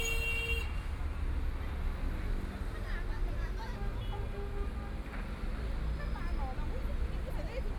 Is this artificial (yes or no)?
no